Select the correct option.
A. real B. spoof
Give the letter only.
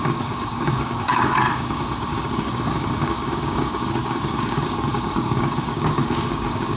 B